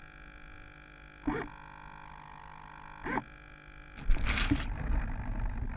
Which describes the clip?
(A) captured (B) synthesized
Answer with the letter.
A